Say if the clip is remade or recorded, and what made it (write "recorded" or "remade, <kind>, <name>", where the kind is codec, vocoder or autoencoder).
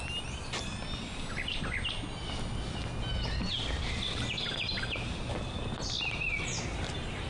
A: recorded